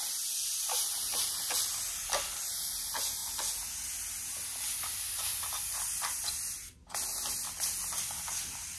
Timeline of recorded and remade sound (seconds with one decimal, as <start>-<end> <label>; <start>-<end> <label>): 0.0-8.8 recorded